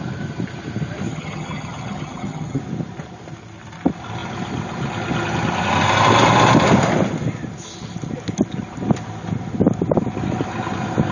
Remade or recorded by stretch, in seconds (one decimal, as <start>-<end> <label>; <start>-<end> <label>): 0.0-1.1 recorded; 1.1-2.6 remade; 2.6-11.1 recorded